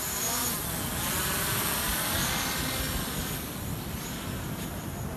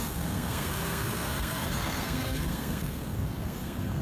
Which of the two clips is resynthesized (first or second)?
second